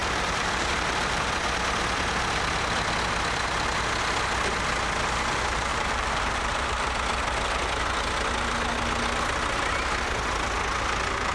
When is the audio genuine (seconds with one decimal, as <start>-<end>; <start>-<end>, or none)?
1.2-5.7; 6.9-11.3